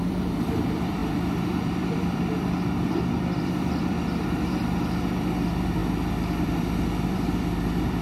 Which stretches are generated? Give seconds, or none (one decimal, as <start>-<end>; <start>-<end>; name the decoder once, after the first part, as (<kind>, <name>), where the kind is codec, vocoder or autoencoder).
0.0-5.8 (vocoder, BigVGAN v2); 6.4-8.0